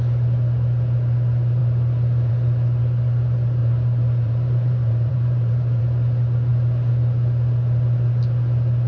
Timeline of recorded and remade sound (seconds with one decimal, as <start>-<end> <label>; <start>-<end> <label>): 0.0-3.6 recorded; 3.6-5.8 remade; 5.8-8.9 recorded